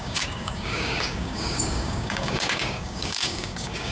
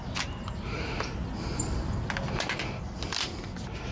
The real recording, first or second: second